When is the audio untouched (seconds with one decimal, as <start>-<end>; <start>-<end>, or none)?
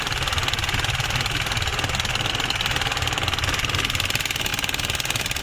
0.0-4.5